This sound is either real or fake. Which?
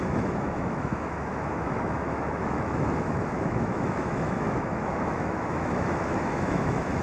fake